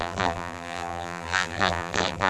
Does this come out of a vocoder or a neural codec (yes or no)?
yes